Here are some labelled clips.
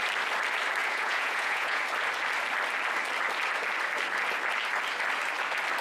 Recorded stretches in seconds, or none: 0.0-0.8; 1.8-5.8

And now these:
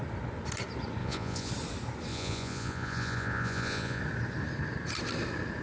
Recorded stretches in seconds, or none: 0.0-1.0; 1.5-2.1; 4.0-5.6

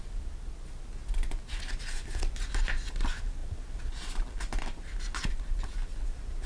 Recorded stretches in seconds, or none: 0.0-6.5

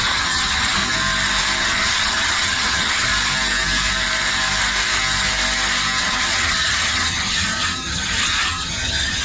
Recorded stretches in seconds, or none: 0.8-1.6; 3.1-6.0

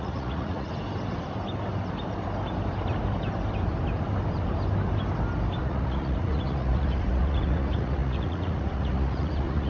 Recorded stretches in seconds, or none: 0.7-5.6

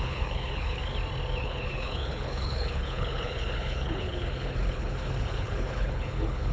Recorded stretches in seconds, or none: 0.8-1.4